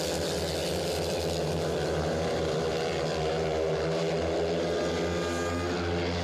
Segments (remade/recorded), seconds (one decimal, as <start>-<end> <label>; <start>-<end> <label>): 0.0-0.6 recorded; 0.6-4.1 remade; 4.1-6.2 recorded